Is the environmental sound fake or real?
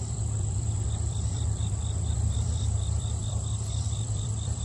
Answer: fake